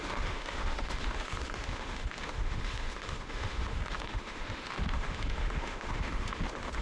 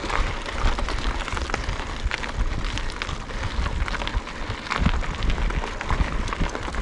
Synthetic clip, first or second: first